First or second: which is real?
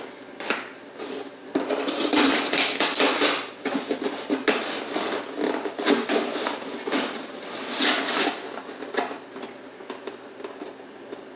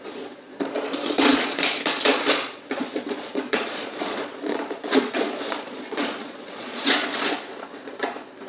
first